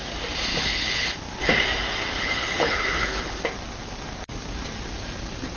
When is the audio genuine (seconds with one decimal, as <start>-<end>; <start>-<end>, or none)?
0.0-0.5; 1.2-2.1; 3.4-5.6